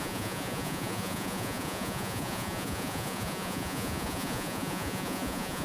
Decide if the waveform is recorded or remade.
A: remade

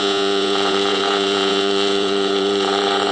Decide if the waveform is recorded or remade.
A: remade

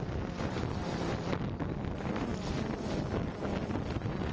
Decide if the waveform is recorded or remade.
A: recorded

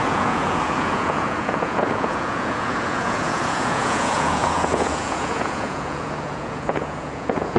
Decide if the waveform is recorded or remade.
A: remade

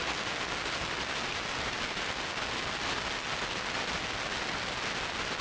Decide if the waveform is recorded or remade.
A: recorded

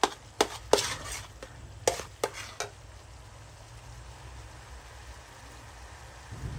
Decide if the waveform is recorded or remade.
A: recorded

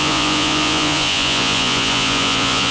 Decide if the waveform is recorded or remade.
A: remade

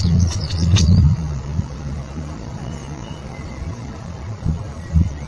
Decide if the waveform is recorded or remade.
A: remade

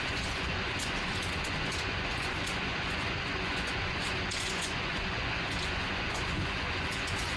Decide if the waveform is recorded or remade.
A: remade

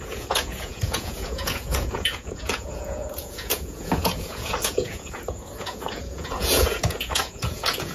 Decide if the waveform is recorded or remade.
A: remade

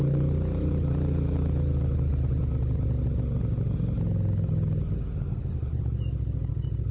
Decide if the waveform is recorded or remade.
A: recorded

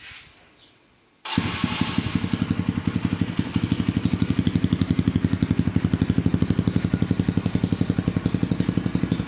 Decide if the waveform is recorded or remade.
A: recorded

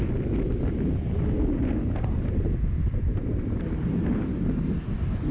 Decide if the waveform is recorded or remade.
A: recorded